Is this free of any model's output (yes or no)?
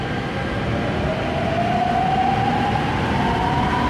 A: yes